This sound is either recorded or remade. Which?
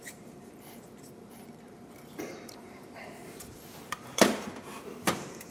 remade